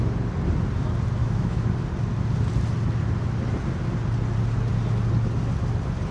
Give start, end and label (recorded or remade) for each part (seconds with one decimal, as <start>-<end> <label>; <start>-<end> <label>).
0.0-1.2 recorded; 1.2-1.7 remade; 1.7-6.1 recorded